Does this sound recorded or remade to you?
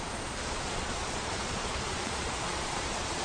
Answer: remade